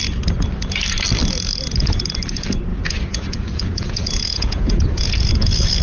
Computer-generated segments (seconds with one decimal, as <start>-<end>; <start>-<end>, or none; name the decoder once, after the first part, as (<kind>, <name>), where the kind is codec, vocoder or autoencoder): 2.7-5.8 (vocoder, Vocos)